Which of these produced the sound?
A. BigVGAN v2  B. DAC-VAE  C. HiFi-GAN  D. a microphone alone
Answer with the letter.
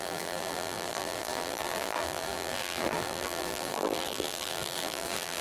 A